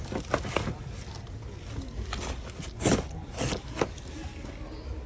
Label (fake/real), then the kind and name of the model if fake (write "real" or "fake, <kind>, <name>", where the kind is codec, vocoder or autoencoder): real